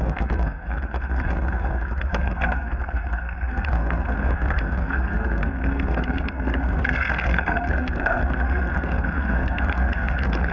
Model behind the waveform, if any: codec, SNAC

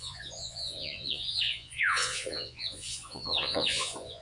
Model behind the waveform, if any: vocoder, Vocos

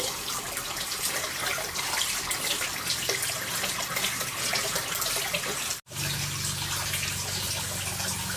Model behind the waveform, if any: none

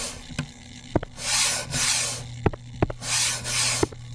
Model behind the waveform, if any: none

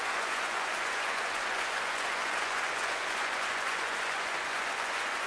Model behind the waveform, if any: vocoder, Vocos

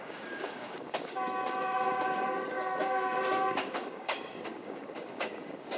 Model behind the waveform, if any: codec, DAC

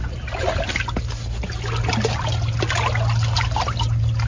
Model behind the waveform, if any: none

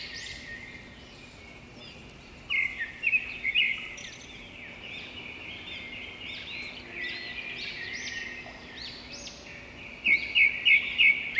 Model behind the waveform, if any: none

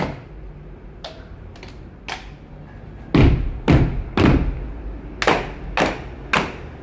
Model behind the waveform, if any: none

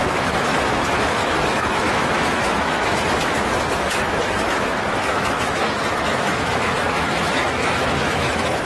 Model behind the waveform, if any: autoencoder, DAC-VAE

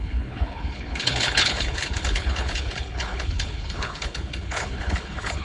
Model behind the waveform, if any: codec, HILCodec